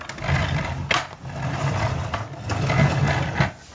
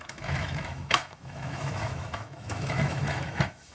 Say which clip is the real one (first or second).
first